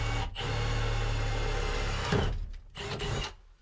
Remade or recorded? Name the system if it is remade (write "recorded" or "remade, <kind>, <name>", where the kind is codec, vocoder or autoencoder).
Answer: recorded